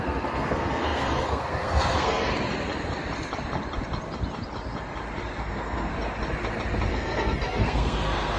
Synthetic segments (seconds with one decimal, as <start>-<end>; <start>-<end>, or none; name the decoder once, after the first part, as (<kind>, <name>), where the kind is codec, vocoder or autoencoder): 0.0-2.3 (codec, SNAC); 5.4-5.9; 6.9-8.4